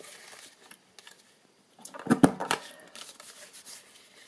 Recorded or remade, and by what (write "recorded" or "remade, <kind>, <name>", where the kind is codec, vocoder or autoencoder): recorded